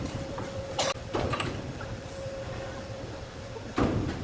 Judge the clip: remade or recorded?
recorded